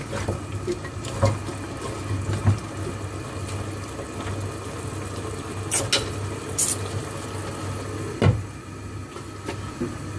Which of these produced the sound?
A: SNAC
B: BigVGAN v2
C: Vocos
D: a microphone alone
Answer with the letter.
D